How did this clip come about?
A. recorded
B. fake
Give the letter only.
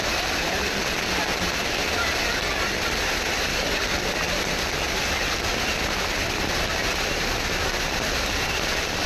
A